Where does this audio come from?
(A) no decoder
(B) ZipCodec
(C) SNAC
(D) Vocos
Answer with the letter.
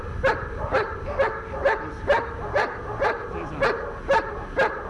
A